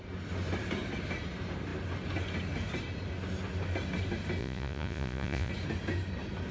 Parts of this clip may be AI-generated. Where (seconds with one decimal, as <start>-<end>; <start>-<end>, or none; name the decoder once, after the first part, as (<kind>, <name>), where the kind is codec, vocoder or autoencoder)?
4.4-5.5 (vocoder, Vocos)